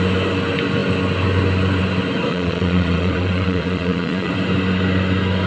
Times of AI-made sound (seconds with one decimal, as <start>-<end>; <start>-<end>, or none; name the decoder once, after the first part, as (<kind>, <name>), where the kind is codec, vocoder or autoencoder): 2.3-4.3 (vocoder, Vocos)